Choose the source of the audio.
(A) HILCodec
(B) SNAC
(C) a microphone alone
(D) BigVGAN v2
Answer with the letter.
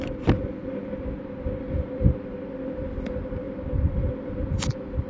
C